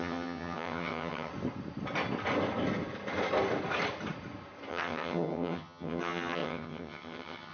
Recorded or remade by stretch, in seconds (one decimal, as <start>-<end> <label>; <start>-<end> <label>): 0.0-1.3 remade; 1.3-4.7 recorded; 4.7-7.5 remade